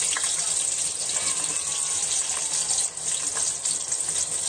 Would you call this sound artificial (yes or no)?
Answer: no